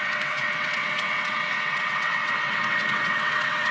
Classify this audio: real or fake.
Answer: fake